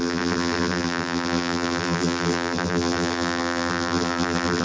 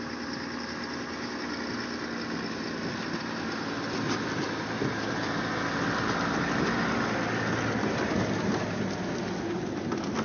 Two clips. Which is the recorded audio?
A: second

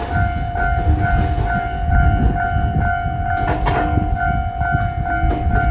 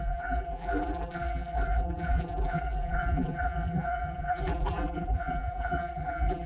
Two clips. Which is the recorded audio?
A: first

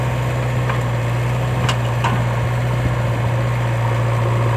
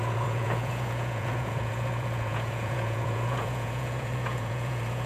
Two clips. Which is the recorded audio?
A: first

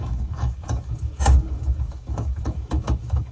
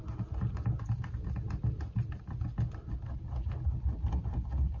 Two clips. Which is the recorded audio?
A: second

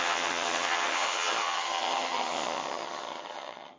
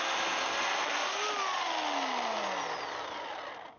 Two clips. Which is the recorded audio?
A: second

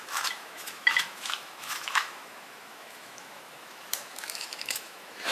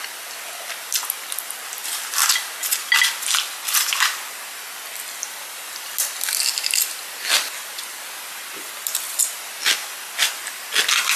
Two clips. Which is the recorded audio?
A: second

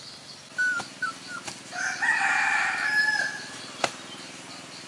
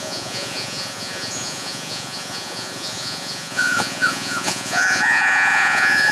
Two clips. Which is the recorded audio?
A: first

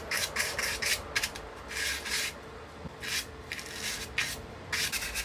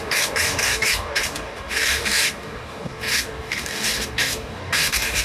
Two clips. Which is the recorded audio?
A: first